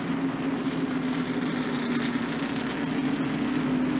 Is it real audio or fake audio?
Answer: real